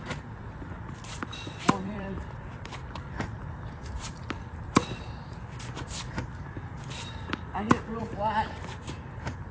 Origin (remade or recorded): remade